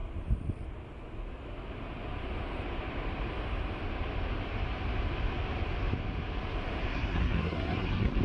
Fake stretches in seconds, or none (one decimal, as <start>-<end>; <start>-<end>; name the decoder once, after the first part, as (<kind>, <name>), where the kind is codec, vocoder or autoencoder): 6.9-8.2 (codec, SNAC)